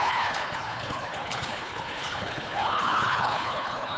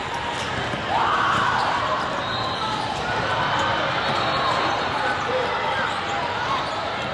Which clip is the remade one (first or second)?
first